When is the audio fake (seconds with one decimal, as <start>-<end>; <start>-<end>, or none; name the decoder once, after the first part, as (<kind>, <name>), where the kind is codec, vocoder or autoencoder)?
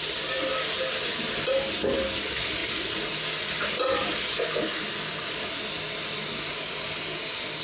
none